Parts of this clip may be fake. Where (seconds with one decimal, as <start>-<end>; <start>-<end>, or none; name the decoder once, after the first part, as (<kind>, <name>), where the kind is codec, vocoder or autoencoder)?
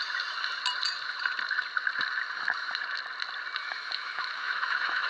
3.6-5.1 (autoencoder, DAC-VAE)